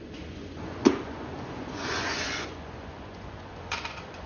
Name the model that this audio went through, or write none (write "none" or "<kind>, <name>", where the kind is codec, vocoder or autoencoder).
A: vocoder, Vocos